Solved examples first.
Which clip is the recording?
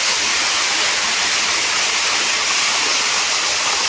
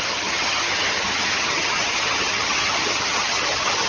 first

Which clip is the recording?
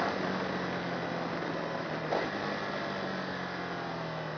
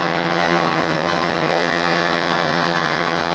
first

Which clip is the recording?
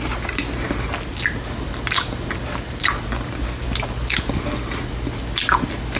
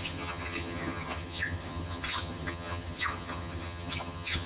first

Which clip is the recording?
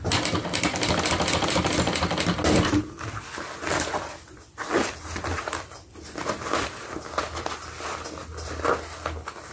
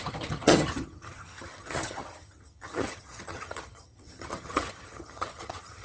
first